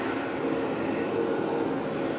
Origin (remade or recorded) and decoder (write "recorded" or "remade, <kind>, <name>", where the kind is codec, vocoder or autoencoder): recorded